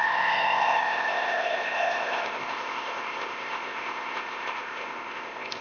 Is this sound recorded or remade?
remade